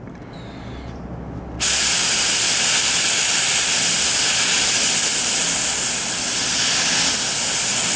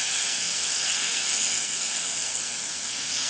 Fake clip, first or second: second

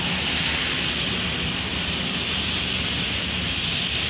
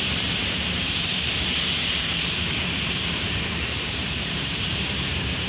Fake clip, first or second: second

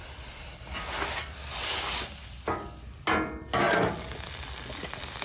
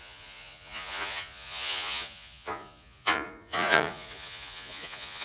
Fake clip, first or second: second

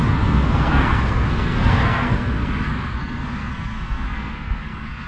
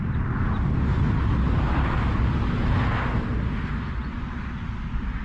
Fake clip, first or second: first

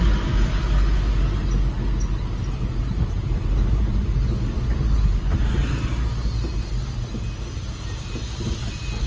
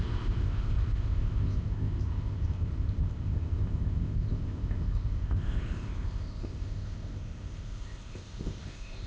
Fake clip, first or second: second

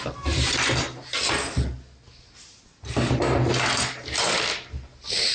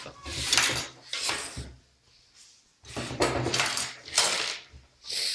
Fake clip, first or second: second